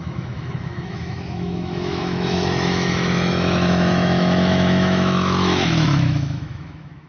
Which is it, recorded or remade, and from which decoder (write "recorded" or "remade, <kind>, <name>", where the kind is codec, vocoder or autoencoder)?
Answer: remade, autoencoder, DAC-VAE